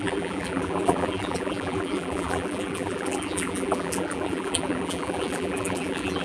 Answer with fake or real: fake